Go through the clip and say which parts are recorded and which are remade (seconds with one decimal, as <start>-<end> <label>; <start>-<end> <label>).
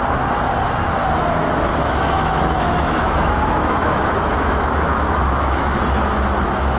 0.0-1.7 recorded; 1.7-5.8 remade; 5.8-6.8 recorded